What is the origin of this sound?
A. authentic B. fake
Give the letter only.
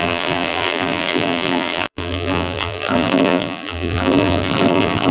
B